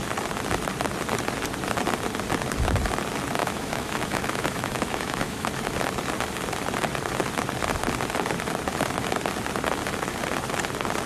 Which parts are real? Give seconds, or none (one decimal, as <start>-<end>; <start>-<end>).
0.0-3.4; 5.5-11.1